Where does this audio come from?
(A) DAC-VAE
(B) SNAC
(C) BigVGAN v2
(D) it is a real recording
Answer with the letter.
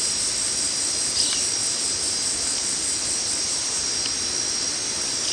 C